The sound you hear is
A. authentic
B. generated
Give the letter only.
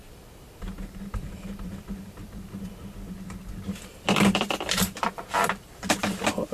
B